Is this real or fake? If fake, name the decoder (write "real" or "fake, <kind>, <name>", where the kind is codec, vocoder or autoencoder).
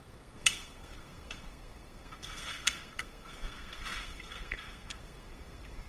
fake, codec, SNAC